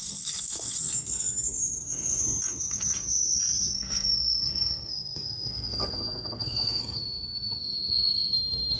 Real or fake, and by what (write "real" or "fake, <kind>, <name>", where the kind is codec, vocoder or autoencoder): fake, codec, SNAC